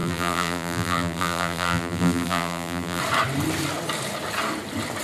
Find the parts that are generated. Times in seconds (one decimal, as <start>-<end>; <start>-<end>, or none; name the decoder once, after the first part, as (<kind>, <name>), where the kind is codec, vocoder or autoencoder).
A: 0.0-3.0 (vocoder, BigVGAN v2)